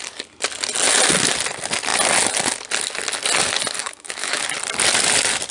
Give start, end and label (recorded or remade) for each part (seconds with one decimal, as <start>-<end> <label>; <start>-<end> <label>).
0.0-3.8 recorded; 3.8-4.4 remade; 4.4-5.5 recorded